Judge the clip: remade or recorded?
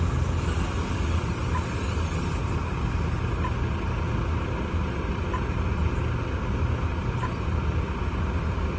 recorded